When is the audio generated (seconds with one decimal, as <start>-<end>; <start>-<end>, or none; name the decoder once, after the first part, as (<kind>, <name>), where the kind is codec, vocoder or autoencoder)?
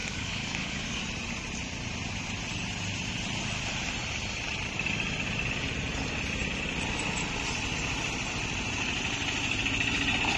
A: 0.0-1.0 (codec, DAC)